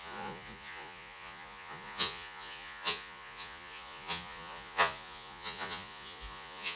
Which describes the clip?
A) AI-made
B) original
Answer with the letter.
A